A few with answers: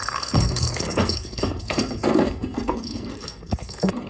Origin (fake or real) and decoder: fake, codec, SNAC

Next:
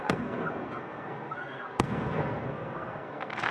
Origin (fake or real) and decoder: fake, codec, SNAC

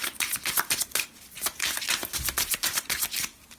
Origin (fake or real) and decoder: real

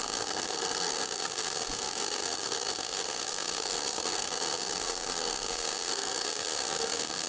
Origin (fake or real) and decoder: fake, codec, SNAC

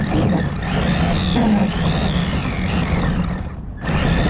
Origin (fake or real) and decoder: real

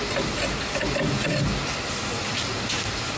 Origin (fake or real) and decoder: real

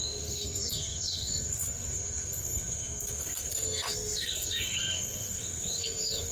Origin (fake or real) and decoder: fake, codec, SNAC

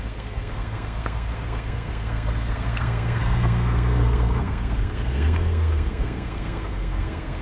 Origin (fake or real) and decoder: fake, codec, SNAC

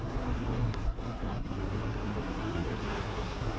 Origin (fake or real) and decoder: fake, codec, SNAC